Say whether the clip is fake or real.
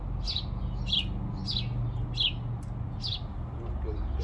real